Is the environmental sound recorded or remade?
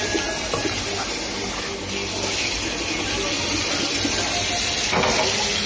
recorded